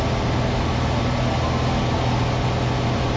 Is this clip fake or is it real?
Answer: real